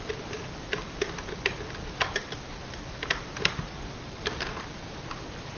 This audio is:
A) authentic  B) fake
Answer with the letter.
A